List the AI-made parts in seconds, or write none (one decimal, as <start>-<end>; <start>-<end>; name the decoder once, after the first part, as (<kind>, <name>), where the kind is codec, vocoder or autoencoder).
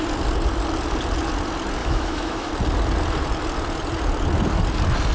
1.8-2.5 (autoencoder, DAC-VAE)